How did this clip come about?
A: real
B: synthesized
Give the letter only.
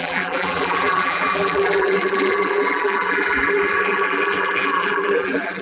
B